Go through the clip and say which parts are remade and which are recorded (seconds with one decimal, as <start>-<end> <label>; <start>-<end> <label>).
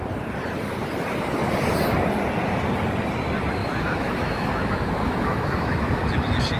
0.0-3.6 recorded; 3.6-6.0 remade; 6.0-6.6 recorded